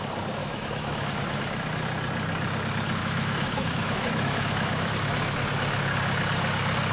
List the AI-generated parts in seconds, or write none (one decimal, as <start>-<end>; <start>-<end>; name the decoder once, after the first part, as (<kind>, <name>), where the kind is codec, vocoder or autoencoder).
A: 0.4-1.2 (autoencoder, DAC-VAE); 3.0-4.9